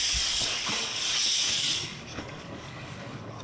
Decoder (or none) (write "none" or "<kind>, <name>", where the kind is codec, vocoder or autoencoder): codec, DAC